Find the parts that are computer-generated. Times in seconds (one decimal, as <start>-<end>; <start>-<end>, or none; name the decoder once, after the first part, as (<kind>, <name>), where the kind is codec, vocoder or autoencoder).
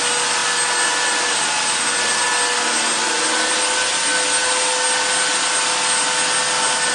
none